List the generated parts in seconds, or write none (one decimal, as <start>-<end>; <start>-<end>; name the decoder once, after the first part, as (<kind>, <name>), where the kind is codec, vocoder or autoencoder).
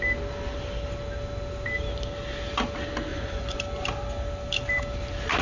3.1-3.6 (vocoder, Vocos)